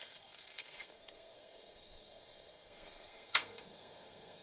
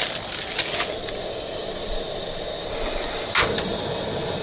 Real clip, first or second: second